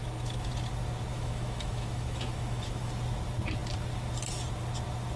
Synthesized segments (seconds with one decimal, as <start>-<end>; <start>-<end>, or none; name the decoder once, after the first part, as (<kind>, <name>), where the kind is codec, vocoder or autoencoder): 0.0-0.5 (autoencoder, DAC-VAE); 1.1-2.9